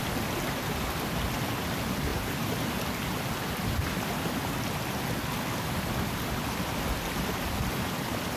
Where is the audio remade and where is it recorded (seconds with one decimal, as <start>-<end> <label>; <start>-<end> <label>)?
0.0-2.1 recorded; 2.1-2.8 remade; 2.8-8.4 recorded